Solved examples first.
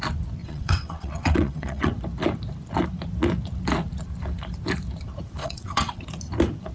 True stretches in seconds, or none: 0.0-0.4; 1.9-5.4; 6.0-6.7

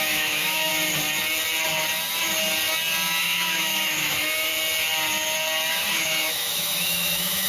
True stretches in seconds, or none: 0.7-3.2; 4.5-5.7

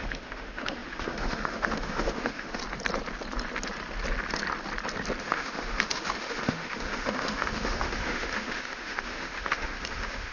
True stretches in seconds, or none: 2.6-5.2

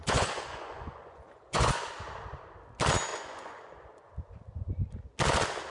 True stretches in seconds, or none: 1.7-3.1; 4.1-5.7

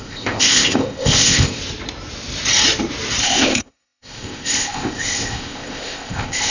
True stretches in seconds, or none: 1.6-3.2

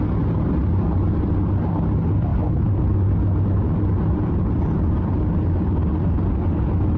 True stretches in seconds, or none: 0.0-7.0

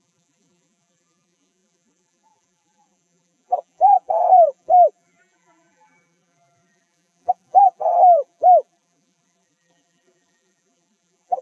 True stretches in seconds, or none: none